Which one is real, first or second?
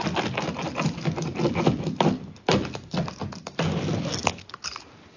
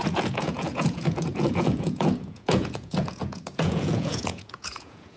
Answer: first